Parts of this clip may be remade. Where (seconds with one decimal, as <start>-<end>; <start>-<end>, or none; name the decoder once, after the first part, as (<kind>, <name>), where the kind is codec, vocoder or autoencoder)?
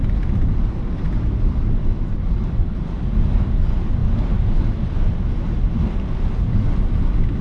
none